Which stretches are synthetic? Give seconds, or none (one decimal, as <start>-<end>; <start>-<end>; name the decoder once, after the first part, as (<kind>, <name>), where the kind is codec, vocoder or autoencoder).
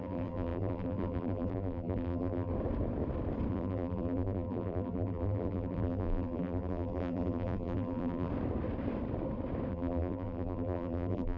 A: 0.0-2.5 (vocoder, BigVGAN v2); 3.5-8.3; 9.7-11.4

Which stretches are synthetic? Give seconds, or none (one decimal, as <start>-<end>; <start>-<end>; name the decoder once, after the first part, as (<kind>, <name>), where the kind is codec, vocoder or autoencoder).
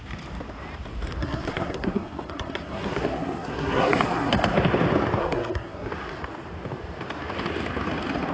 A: 1.2-4.3 (codec, SNAC); 5.2-5.9